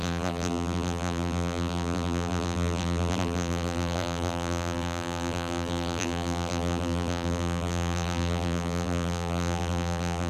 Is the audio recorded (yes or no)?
no